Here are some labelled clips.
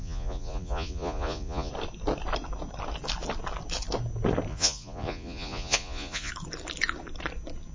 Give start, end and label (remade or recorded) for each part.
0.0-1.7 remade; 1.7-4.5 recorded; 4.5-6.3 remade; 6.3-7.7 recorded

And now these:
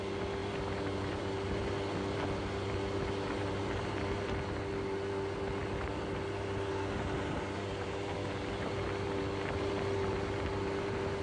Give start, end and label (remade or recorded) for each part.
0.0-11.2 recorded

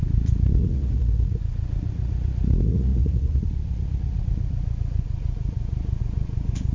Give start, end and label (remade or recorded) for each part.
0.0-6.7 remade

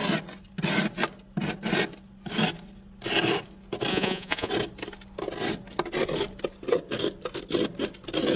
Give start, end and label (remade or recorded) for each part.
0.0-3.9 recorded; 3.9-4.5 remade; 4.5-8.4 recorded

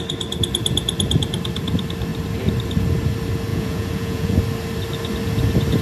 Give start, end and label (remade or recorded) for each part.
0.0-3.5 recorded; 3.5-4.4 remade; 4.4-5.8 recorded